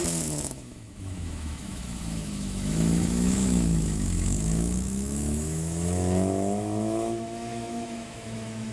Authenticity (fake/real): fake